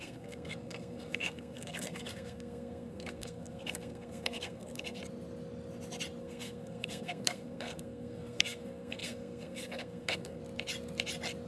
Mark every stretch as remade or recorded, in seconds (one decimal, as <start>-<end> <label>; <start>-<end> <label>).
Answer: 0.0-5.0 remade; 5.0-6.2 recorded; 6.2-10.4 remade; 10.4-11.5 recorded